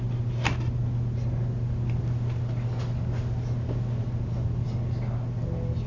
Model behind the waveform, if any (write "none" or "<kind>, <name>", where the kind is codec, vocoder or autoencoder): none